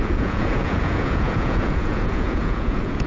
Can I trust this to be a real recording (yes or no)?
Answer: no